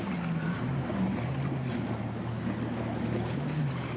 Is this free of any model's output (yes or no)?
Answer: yes